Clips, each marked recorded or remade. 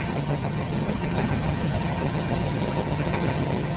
remade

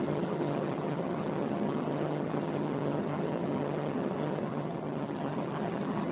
remade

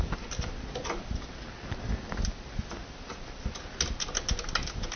recorded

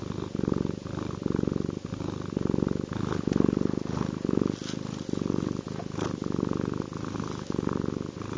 recorded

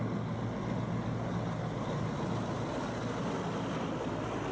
recorded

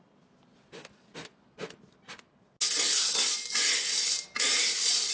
recorded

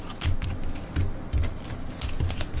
recorded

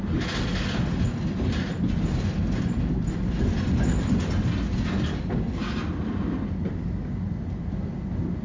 recorded